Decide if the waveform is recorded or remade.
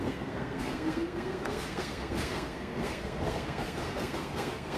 remade